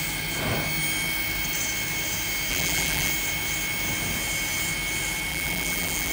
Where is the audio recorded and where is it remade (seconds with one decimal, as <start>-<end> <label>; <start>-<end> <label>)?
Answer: 0.0-2.5 recorded; 2.5-3.1 remade; 3.1-5.3 recorded; 5.3-6.1 remade